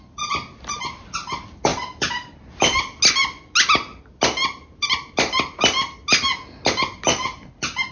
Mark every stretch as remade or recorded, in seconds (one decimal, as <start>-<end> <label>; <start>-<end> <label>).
0.0-7.9 recorded